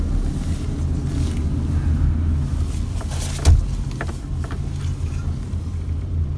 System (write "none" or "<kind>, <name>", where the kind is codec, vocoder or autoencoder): none